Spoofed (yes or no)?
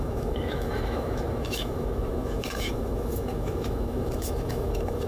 yes